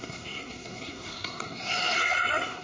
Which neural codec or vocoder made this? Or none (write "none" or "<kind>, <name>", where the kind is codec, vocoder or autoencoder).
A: codec, SNAC